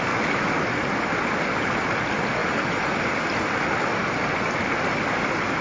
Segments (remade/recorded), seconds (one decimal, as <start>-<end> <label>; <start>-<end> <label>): 0.0-5.6 recorded